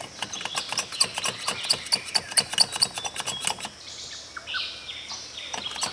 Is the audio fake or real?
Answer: real